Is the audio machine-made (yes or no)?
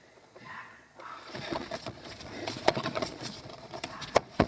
yes